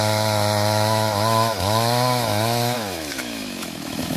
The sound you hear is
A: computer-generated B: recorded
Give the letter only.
A